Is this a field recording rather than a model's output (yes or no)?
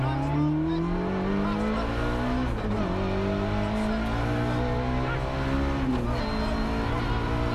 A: yes